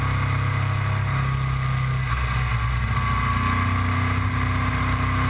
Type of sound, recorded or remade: recorded